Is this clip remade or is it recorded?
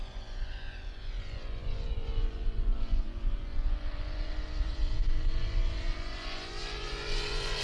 remade